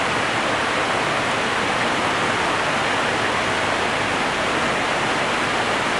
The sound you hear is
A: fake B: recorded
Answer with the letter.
B